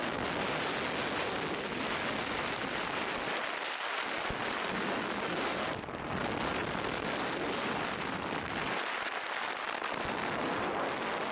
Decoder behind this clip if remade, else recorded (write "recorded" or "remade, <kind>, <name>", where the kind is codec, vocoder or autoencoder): recorded